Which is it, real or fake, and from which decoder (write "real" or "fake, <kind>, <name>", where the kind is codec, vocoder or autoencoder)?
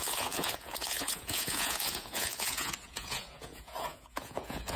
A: fake, vocoder, Vocos